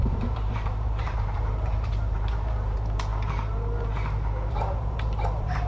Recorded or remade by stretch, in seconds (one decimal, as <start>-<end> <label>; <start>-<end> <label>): 0.0-3.1 remade; 3.1-4.5 recorded; 4.5-5.7 remade